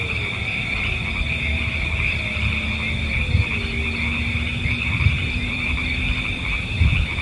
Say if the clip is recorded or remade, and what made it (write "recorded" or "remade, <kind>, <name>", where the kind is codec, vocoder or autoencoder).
remade, vocoder, BigVGAN v2